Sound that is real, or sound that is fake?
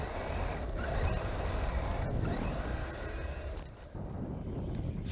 real